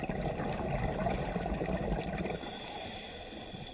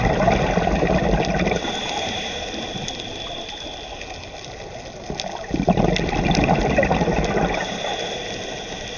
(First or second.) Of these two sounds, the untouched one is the second